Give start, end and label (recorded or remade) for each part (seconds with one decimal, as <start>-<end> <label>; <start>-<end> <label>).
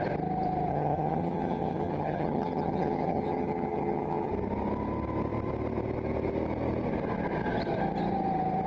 0.0-0.7 recorded; 0.7-4.3 remade; 4.3-8.7 recorded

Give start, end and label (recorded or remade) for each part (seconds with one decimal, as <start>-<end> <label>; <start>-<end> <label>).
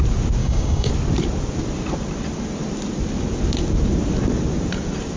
0.0-0.4 recorded; 0.4-0.9 remade; 0.9-5.2 recorded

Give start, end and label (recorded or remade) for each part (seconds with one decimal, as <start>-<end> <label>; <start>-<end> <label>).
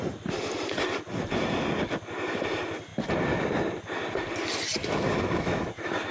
0.0-4.8 recorded; 4.8-6.1 remade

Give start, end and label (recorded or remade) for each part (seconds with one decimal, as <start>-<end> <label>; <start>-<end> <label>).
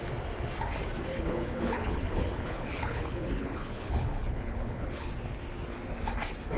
0.0-1.1 recorded; 1.1-5.1 remade; 5.1-6.6 recorded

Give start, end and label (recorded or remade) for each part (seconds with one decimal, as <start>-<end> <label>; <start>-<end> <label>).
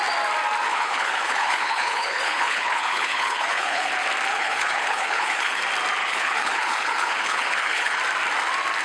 0.0-0.7 recorded; 0.7-3.9 remade; 3.9-4.3 recorded; 4.3-5.6 remade; 5.6-6.0 recorded; 6.0-8.0 remade; 8.0-8.8 recorded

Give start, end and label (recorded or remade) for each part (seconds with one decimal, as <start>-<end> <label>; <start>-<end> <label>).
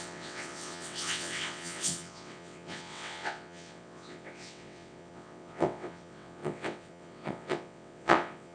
0.0-8.5 remade